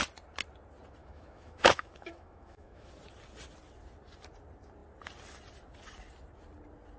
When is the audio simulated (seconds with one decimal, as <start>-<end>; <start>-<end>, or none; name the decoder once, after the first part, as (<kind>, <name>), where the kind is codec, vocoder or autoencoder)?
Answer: 1.0-2.9 (autoencoder, DAC-VAE)